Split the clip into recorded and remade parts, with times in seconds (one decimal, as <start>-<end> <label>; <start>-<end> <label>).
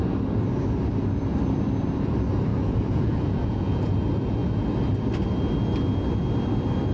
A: 0.0-2.5 recorded; 2.5-3.9 remade; 3.9-6.9 recorded